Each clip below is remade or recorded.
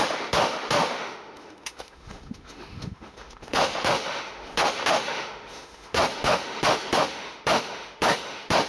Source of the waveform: remade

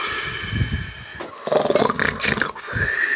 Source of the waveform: recorded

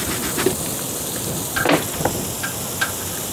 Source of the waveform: recorded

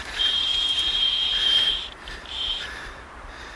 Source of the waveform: remade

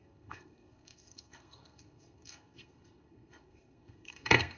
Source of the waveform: remade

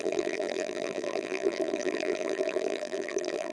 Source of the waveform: remade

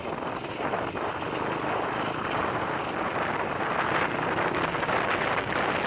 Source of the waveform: recorded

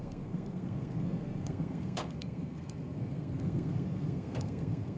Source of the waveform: remade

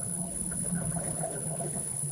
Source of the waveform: remade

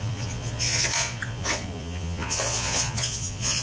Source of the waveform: remade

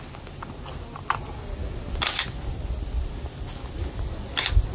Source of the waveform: recorded